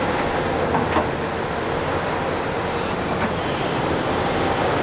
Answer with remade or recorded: recorded